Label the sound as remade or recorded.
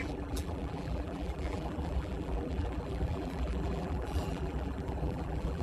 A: remade